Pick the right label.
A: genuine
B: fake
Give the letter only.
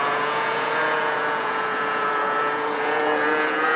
B